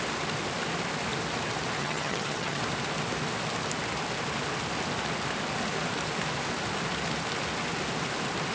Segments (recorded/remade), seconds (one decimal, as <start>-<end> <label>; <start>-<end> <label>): 0.0-1.8 recorded; 1.8-2.6 remade; 2.6-8.5 recorded